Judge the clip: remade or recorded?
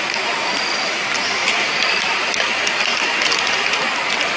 recorded